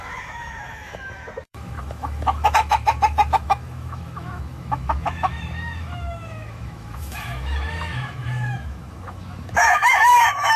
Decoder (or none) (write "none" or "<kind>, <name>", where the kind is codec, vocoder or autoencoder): autoencoder, DAC-VAE